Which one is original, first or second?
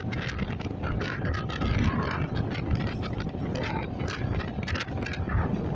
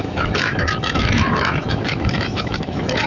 first